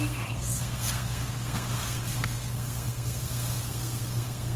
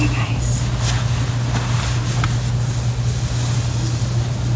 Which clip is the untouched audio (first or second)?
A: second